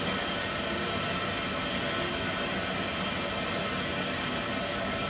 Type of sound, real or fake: real